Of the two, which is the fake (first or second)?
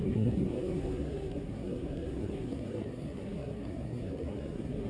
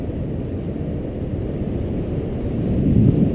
first